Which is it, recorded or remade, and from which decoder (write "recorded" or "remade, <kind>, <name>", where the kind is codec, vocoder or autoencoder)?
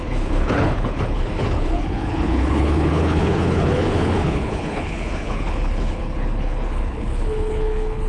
remade, codec, HILCodec